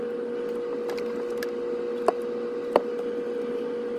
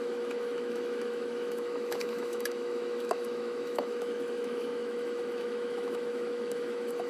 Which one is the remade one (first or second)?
second